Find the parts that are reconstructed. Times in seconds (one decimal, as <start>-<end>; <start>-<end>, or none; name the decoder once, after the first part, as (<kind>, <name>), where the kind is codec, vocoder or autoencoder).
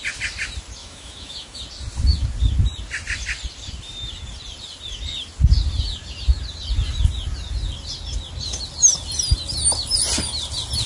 0.8-1.6 (autoencoder, DAC-VAE)